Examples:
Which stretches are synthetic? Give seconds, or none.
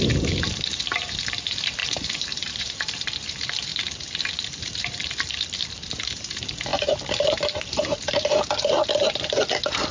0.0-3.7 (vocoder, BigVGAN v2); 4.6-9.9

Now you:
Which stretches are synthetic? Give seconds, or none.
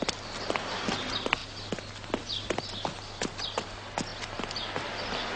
none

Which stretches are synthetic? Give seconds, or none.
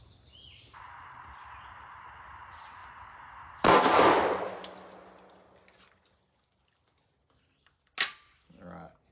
none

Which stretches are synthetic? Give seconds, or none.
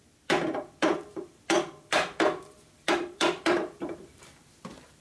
0.0-5.0 (vocoder, BigVGAN v2)